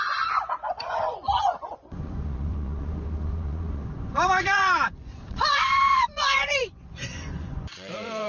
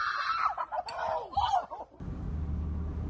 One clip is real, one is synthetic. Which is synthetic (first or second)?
first